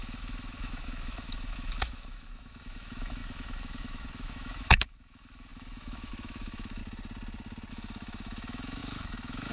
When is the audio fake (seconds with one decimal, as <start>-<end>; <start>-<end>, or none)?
0.0-6.8; 7.7-9.5